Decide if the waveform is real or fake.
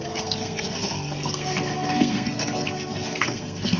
fake